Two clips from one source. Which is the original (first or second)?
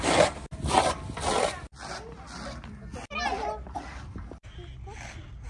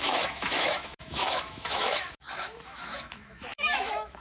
first